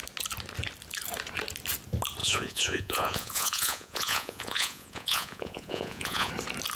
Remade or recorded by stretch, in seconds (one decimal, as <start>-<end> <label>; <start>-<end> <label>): 0.0-2.2 recorded; 2.2-6.3 remade; 6.3-6.8 recorded